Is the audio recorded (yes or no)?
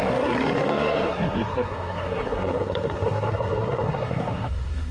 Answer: no